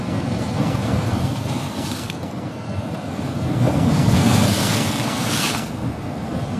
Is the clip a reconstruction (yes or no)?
yes